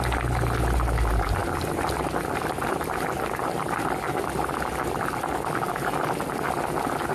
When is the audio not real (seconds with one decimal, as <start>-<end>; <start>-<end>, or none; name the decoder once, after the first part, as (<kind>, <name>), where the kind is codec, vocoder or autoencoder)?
none